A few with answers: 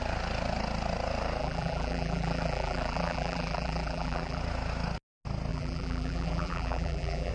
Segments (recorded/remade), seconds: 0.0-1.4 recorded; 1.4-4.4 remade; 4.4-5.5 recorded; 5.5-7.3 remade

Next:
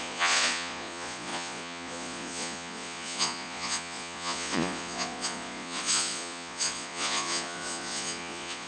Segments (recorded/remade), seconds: 0.0-8.7 remade

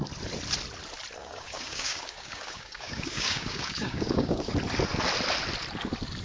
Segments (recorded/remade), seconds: 0.0-1.2 recorded; 1.2-4.5 remade; 4.5-6.2 recorded

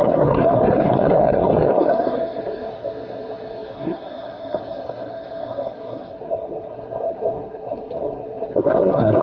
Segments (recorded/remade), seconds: 0.0-9.2 remade

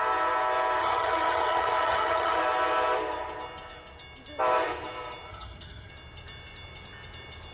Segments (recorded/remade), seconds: 0.0-0.8 recorded; 0.8-2.4 remade; 2.4-5.3 recorded; 5.3-5.9 remade; 5.9-7.5 recorded

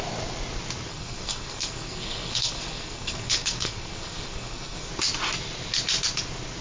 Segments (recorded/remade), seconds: 0.0-0.9 recorded; 0.9-4.9 remade; 4.9-6.6 recorded